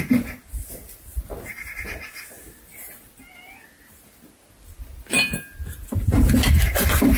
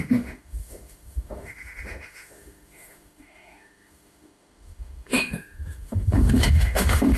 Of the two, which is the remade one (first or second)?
second